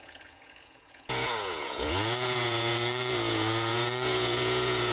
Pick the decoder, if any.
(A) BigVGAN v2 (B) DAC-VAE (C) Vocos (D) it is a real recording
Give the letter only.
C